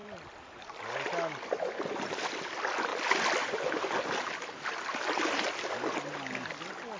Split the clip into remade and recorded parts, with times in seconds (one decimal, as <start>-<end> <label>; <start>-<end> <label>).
0.0-7.0 recorded